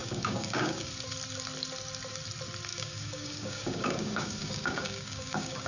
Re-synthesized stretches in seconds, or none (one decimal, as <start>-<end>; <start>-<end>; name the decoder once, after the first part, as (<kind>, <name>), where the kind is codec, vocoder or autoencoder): 0.0-0.9 (codec, DAC); 2.7-5.7